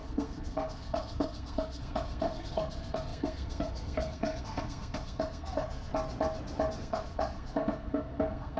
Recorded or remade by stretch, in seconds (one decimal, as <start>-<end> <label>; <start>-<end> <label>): 0.0-5.9 remade; 5.9-6.8 recorded; 6.8-8.6 remade